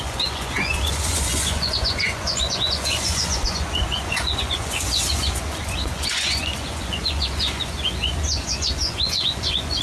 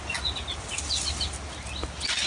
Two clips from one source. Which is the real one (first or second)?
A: second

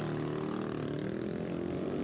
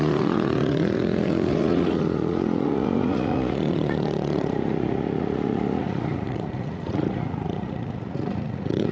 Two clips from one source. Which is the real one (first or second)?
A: first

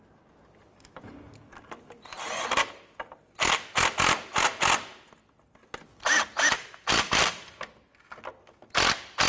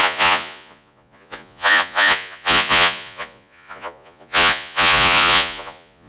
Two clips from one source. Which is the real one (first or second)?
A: first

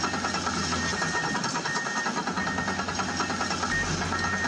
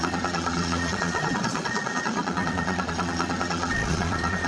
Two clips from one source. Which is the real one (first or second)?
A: first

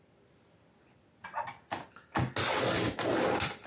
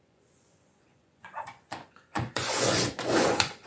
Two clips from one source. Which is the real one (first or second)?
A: first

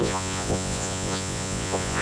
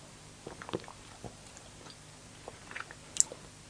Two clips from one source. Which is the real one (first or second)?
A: second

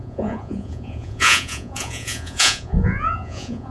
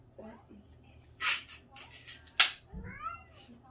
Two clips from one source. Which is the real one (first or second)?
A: second